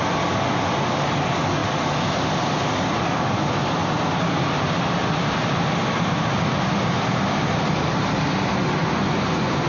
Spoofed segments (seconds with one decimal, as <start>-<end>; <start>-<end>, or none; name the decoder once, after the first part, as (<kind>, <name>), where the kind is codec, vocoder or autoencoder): 8.8-9.7 (vocoder, Vocos)